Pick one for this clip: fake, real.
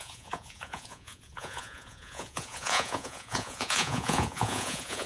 fake